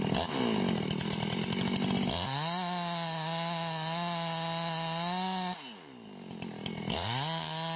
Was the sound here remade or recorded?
recorded